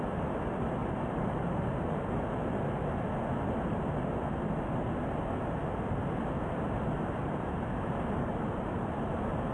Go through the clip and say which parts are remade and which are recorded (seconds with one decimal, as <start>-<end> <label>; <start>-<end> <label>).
0.0-0.8 recorded; 0.8-2.6 remade; 2.6-7.2 recorded; 7.2-7.9 remade; 7.9-8.3 recorded; 8.3-9.5 remade

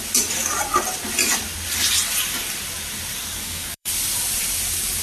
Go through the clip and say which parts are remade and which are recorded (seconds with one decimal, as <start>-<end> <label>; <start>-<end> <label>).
0.0-3.4 recorded; 3.4-3.9 remade; 3.9-5.0 recorded

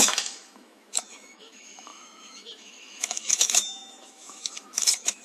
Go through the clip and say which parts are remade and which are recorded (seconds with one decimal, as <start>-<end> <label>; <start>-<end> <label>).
0.0-5.2 remade